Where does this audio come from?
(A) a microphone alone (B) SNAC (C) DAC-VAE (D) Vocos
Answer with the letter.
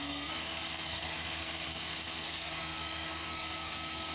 B